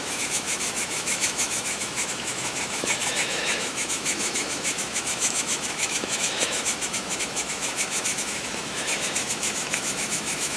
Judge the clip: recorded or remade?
remade